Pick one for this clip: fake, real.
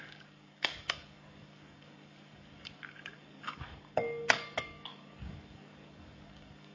fake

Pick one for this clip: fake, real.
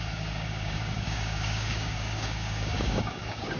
fake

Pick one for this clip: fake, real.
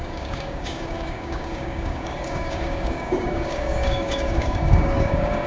fake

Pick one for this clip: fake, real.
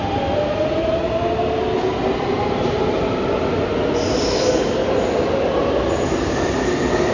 real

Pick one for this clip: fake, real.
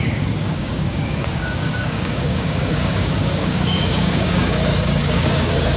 fake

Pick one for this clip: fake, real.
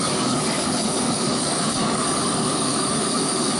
fake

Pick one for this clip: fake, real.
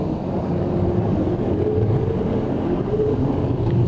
fake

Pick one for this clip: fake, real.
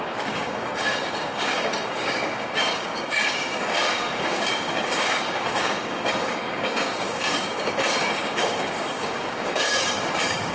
fake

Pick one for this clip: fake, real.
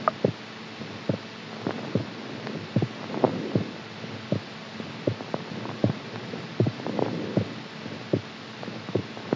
real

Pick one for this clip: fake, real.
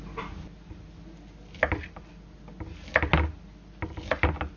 real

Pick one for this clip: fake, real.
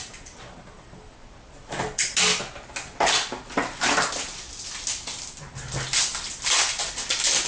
real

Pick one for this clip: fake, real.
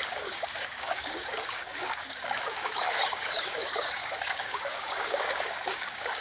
fake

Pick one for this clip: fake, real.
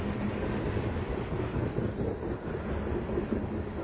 real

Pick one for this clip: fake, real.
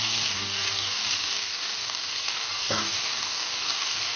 fake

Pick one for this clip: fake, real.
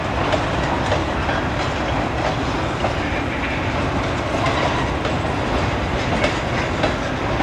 real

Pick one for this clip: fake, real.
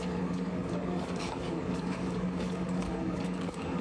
fake